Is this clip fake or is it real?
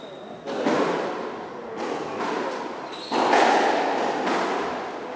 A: real